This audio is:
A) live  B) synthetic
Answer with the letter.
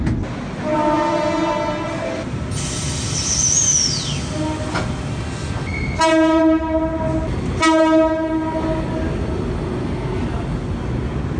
A